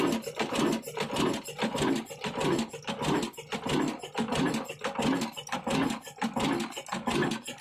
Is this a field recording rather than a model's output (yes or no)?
yes